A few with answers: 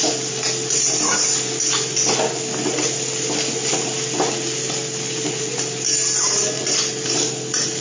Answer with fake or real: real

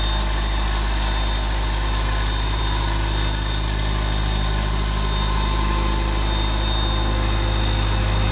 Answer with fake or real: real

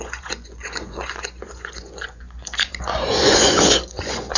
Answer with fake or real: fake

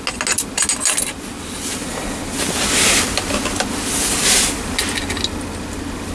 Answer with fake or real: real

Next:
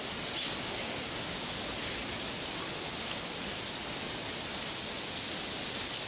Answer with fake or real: real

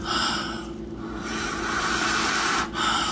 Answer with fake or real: real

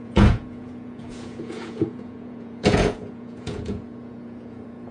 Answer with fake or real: fake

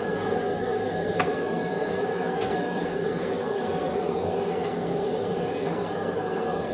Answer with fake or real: fake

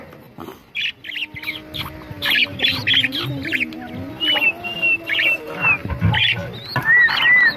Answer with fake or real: real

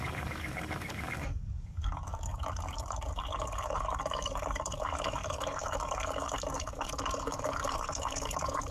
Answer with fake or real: fake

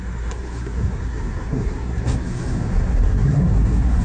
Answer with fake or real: fake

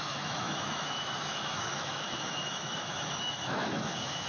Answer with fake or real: fake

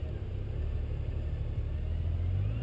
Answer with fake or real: real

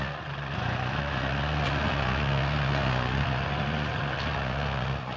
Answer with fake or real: fake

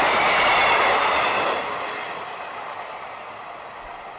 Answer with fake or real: real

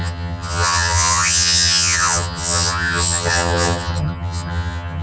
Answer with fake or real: fake